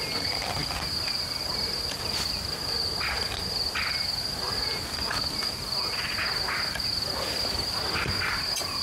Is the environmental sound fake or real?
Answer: real